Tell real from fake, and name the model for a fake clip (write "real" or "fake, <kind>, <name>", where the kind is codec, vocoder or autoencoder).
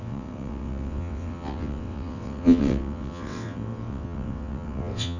fake, vocoder, WaveNeXt